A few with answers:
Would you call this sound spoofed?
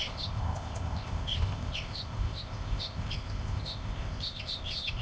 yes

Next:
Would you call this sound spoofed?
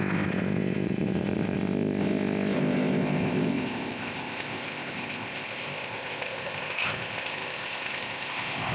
yes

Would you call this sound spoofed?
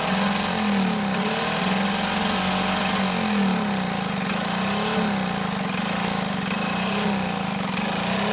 no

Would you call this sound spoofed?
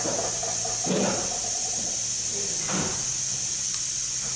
no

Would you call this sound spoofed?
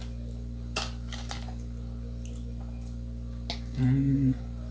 no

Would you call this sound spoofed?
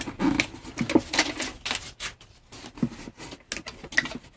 no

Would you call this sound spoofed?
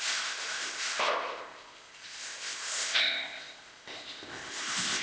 yes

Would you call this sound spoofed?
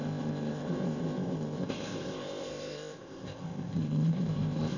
yes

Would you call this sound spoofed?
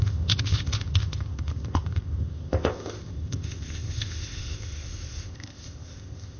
yes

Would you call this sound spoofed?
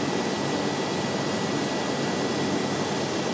no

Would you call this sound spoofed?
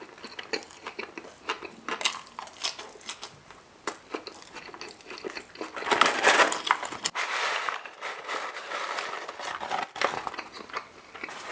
no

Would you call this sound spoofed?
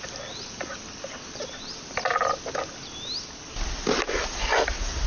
no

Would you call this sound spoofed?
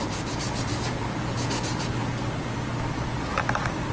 no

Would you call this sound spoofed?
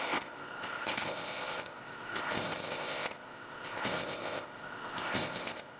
yes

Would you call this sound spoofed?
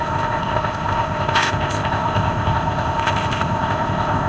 yes